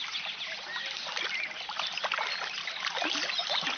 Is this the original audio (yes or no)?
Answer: yes